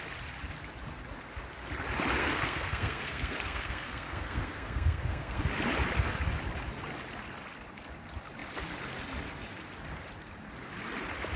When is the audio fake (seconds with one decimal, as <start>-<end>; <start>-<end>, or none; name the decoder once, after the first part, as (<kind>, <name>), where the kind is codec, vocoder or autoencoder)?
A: 2.2-5.4 (codec, SNAC)